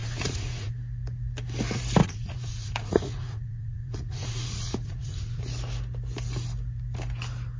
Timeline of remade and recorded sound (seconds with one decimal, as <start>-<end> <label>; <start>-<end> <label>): 0.0-0.7 remade; 0.7-2.0 recorded; 2.0-5.4 remade; 5.4-7.6 recorded